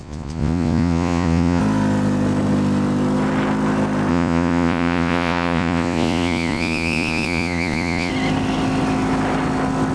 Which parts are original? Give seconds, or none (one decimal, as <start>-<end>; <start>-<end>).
1.6-4.1; 8.1-9.9